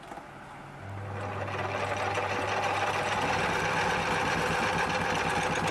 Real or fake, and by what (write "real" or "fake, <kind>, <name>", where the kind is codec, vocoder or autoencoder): real